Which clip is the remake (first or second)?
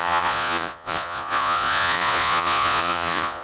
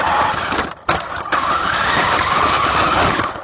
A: first